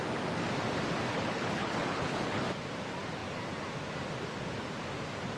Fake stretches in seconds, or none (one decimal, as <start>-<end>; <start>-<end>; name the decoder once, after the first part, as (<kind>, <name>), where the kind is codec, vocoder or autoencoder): 1.1-2.4 (codec, HILCodec)